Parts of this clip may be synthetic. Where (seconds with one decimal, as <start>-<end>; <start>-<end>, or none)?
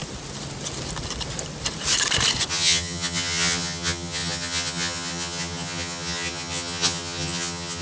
2.5-7.8